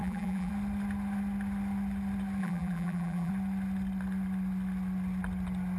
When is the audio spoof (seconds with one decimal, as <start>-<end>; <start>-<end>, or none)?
0.0-0.5; 2.4-3.3